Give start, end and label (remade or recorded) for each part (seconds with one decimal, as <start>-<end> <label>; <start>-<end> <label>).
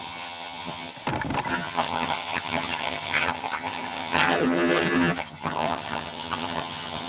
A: 0.0-0.9 remade; 0.9-1.5 recorded; 1.5-7.1 remade